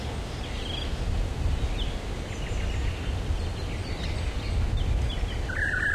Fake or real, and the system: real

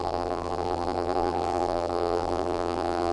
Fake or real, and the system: fake, vocoder, BigVGAN v2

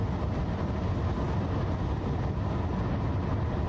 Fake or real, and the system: real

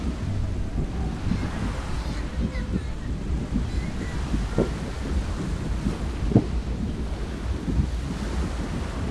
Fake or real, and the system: real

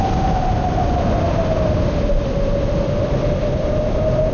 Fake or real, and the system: real